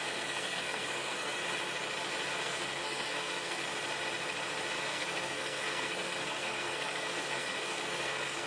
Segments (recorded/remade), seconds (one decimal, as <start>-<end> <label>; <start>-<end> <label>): 0.0-1.4 remade; 1.4-2.4 recorded; 2.4-3.6 remade; 3.6-4.7 recorded; 4.7-8.5 remade